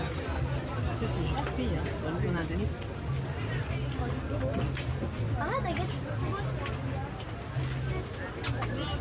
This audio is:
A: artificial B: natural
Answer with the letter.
B